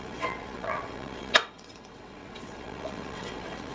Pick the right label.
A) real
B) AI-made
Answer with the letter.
B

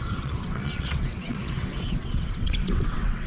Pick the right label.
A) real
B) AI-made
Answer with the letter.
B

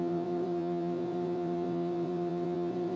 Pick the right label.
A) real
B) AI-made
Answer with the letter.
B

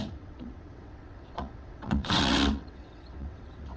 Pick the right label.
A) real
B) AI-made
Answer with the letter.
B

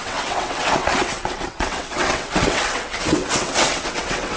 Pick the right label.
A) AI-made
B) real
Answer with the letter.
A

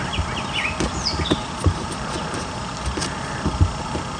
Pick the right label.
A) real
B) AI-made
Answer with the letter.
A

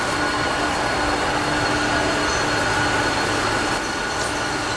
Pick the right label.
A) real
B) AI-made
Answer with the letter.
A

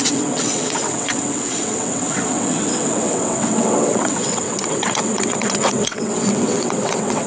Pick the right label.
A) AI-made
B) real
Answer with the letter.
A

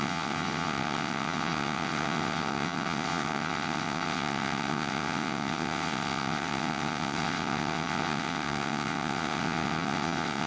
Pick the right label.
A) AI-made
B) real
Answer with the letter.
A